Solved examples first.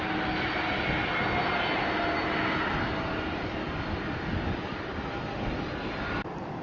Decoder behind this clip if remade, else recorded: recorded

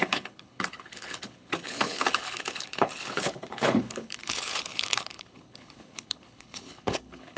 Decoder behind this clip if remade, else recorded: remade, codec, HILCodec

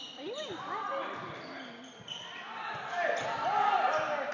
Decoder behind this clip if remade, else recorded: recorded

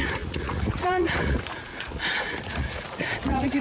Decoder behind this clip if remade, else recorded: remade, vocoder, Vocos